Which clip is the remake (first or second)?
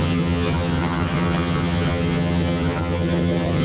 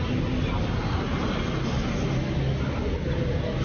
first